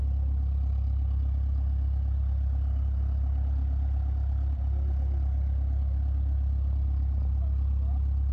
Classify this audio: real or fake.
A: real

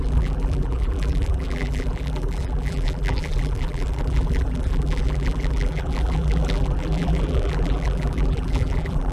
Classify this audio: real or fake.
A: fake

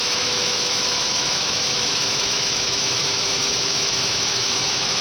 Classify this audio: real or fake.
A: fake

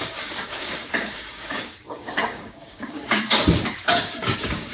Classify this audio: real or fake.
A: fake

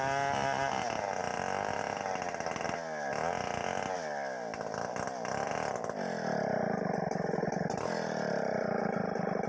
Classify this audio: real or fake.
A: real